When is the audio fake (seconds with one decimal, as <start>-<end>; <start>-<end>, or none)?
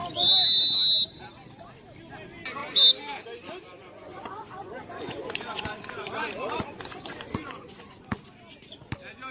3.8-8.0